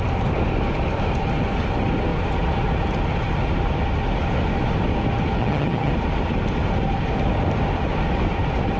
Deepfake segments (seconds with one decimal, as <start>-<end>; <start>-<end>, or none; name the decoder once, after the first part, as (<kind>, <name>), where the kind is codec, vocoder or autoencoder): 5.4-5.9 (vocoder, HiFi-GAN)